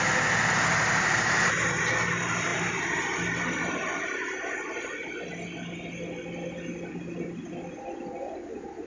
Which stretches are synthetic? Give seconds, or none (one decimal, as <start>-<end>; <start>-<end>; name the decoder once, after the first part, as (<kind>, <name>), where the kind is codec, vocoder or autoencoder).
none